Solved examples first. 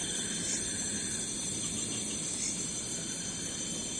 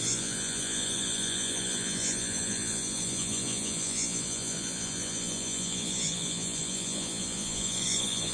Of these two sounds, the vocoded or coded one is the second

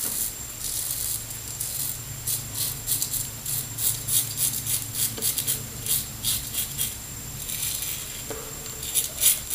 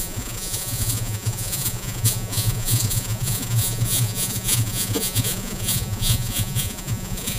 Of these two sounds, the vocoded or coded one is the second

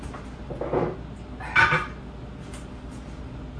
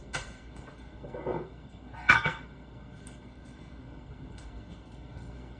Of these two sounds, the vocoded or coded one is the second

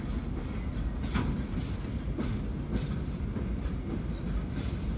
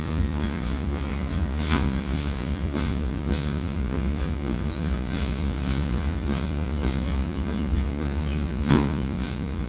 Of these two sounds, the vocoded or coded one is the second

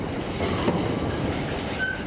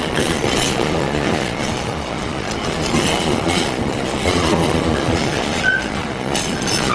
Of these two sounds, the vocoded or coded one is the second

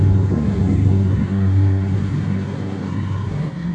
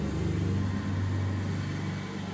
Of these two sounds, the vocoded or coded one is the first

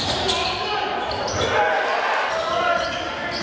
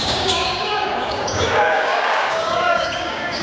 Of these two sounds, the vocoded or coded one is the second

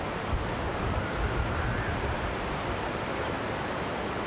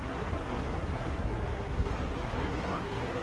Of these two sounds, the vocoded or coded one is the second